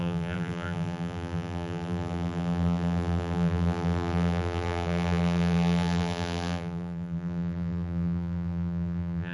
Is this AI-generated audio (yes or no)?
yes